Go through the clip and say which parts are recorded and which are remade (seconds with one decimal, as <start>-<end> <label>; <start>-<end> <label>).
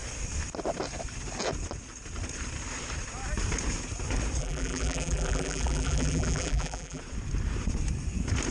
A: 0.0-4.4 recorded; 4.4-7.0 remade; 7.0-8.5 recorded